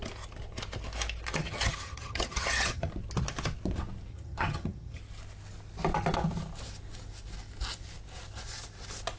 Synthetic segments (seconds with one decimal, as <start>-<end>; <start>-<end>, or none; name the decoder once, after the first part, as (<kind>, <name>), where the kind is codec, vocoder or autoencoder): 1.4-2.9 (vocoder, HiFi-GAN); 4.1-5.0